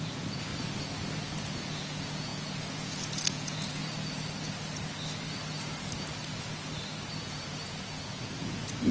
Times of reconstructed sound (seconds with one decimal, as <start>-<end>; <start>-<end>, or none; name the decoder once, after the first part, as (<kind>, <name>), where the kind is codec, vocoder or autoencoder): 0.0-0.5 (vocoder, Vocos); 1.4-3.8; 7.2-8.9

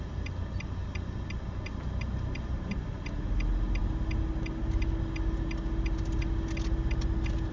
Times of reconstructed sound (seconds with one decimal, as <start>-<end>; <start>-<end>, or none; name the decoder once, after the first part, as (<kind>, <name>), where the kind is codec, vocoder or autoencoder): none

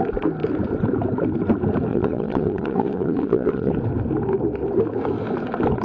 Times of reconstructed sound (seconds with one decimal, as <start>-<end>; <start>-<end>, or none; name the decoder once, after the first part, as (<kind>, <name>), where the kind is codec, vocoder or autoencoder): 1.9-3.7 (vocoder, Vocos)

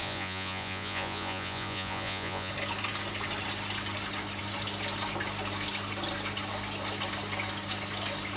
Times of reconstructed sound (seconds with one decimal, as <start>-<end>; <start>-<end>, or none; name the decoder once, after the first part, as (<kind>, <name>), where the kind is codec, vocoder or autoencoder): 0.0-2.5 (vocoder, Vocos)

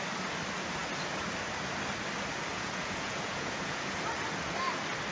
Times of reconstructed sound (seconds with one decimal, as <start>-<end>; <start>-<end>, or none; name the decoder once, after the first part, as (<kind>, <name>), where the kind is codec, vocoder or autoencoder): 2.5-4.0 (vocoder, Vocos)

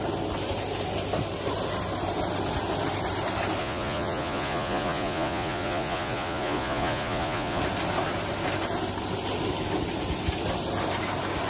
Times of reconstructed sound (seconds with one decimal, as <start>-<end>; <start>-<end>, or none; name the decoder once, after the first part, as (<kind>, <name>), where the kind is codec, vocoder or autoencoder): 3.6-7.6 (vocoder, Vocos)

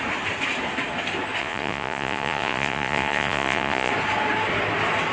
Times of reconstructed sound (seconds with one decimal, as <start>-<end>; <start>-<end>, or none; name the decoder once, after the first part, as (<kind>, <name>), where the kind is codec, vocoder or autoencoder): 1.4-3.9 (vocoder, Vocos)